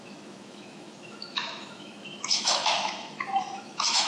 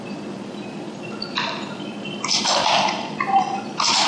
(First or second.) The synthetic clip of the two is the first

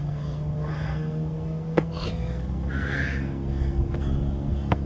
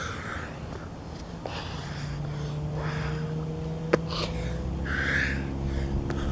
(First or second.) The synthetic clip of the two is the first